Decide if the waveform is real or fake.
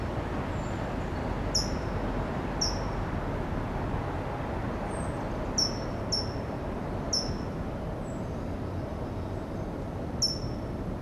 real